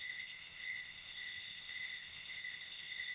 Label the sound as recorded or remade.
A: remade